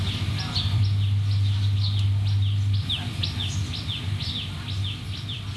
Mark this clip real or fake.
real